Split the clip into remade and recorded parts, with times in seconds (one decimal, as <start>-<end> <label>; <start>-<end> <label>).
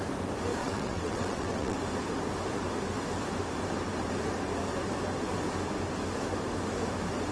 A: 0.0-0.6 recorded; 0.6-1.8 remade; 1.8-7.3 recorded